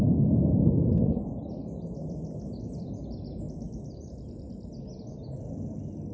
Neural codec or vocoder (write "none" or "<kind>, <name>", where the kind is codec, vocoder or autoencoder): none